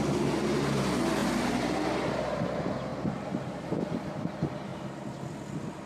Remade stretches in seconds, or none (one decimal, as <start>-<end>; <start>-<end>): none